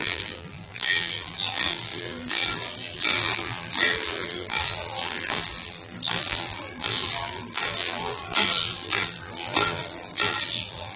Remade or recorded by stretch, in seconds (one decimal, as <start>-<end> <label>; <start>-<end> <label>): 0.0-11.0 remade